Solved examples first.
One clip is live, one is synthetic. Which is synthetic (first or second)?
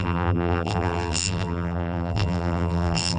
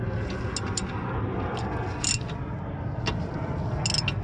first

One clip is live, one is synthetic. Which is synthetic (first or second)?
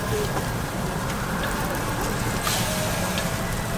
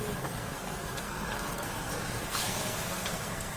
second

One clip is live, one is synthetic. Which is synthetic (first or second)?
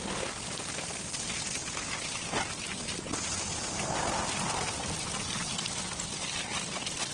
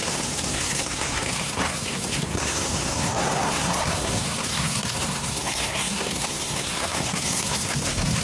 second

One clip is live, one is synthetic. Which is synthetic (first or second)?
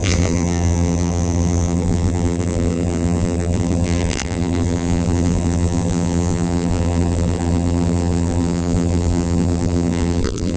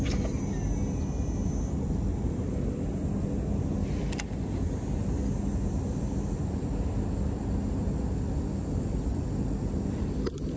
first